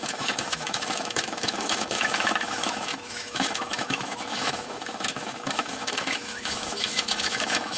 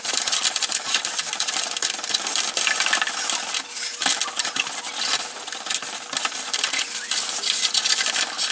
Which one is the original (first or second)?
second